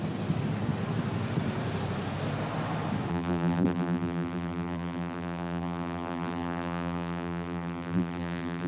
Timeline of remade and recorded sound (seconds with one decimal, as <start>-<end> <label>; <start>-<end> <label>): 0.0-3.1 recorded; 3.1-8.7 remade